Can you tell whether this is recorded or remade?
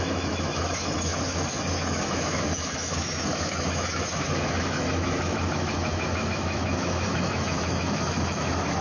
remade